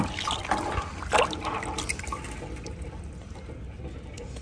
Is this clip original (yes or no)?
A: yes